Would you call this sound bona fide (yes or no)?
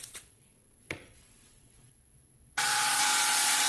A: no